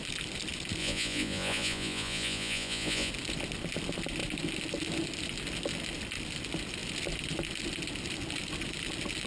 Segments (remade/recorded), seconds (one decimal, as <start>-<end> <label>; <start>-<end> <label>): 0.0-0.8 recorded; 0.8-3.1 remade; 3.1-9.3 recorded